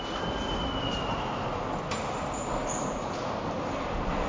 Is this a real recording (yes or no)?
yes